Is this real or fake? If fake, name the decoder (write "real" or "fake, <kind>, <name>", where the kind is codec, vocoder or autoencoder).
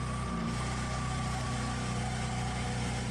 real